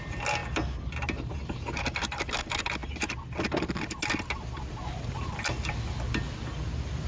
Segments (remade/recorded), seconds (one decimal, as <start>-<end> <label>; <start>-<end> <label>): 0.0-7.1 recorded